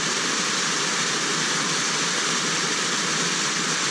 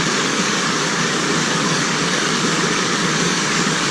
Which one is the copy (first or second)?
second